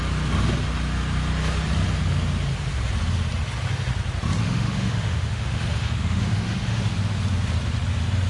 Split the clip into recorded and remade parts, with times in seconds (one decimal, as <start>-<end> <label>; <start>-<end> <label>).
0.0-4.4 recorded; 4.4-6.8 remade; 6.8-8.3 recorded